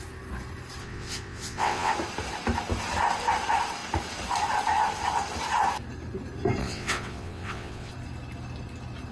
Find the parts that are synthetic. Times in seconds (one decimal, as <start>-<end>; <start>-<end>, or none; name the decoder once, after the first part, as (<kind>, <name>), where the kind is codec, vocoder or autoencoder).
0.8-1.9 (vocoder, WaveNeXt); 6.6-7.9